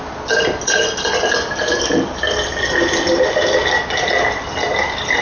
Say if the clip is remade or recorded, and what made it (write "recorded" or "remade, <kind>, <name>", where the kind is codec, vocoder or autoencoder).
recorded